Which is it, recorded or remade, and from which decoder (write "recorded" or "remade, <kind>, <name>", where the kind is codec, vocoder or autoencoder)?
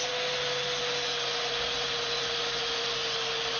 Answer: recorded